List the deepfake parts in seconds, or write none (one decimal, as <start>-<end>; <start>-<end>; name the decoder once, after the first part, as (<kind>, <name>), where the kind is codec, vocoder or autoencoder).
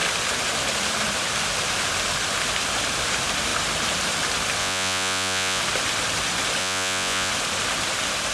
4.6-5.6 (vocoder, Vocos); 6.6-7.3